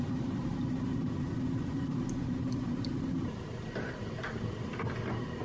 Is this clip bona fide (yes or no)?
yes